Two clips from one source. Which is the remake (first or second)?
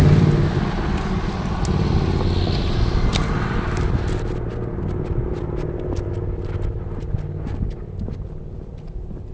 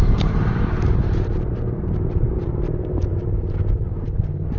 second